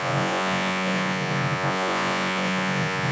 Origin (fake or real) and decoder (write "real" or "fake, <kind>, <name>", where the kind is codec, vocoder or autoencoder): fake, vocoder, Vocos